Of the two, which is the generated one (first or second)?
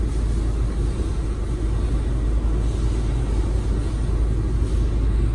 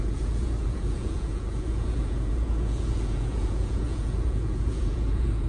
second